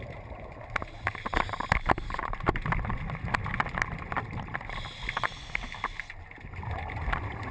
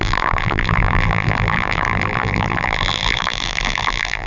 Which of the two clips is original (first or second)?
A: first